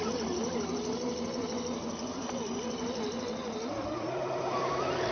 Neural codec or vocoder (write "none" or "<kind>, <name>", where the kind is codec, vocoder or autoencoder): none